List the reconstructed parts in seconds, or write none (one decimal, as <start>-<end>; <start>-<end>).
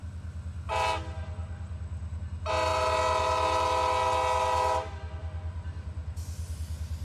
none